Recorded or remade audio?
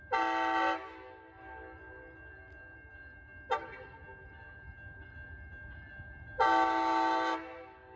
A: recorded